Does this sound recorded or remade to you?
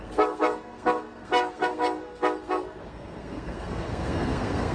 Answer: remade